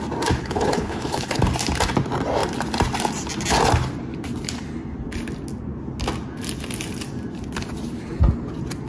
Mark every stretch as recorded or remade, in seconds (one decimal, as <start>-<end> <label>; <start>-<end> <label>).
0.0-0.4 recorded; 0.4-1.4 remade; 1.4-8.9 recorded